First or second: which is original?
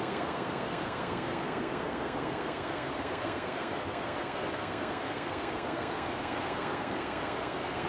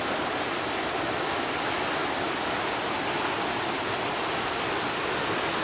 second